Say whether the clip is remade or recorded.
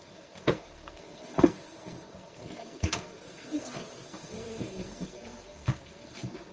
remade